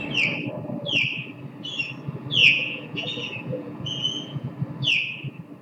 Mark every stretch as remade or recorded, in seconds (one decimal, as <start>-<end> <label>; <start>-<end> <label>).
0.0-2.4 recorded; 2.4-4.5 remade; 4.5-5.6 recorded